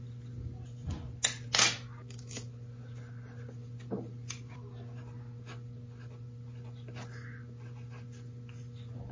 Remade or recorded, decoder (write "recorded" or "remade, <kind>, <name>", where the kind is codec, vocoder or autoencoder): recorded